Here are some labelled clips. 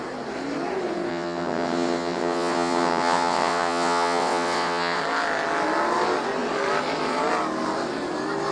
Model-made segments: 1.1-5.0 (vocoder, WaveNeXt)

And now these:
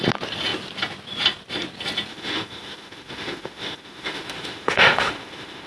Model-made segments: 2.1-5.7 (autoencoder, DAC-VAE)

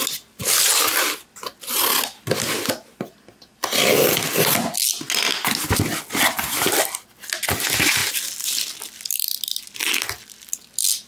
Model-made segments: none

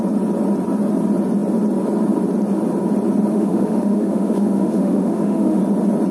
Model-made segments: 3.3-5.6 (autoencoder, DAC-VAE)

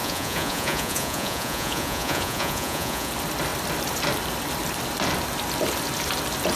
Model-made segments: 0.0-3.1 (vocoder, Vocos)